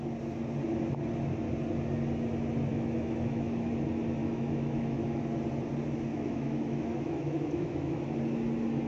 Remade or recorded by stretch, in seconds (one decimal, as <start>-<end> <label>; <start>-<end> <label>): 0.0-2.7 recorded; 2.7-3.7 remade; 3.7-4.2 recorded; 4.2-5.2 remade; 5.2-6.1 recorded; 6.1-8.0 remade; 8.0-8.9 recorded